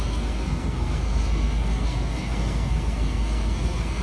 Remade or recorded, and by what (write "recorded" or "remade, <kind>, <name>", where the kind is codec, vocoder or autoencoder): remade, codec, SNAC